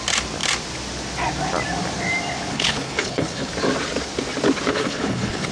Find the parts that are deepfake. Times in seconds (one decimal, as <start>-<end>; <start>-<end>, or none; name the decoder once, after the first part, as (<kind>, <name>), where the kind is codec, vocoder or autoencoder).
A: 2.5-3.5 (codec, HILCodec); 4.7-5.5